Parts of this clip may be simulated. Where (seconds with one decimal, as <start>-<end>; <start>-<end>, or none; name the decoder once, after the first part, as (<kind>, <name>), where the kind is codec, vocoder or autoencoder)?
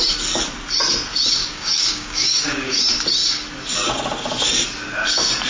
1.4-2.8 (codec, DAC)